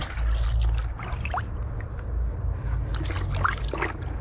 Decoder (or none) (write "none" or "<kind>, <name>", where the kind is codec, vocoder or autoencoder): none